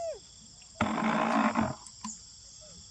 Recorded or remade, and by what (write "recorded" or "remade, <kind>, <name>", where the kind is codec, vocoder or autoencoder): recorded